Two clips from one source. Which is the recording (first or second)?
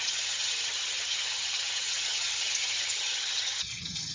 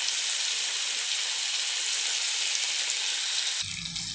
second